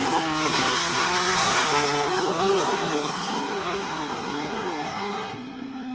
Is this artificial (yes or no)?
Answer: yes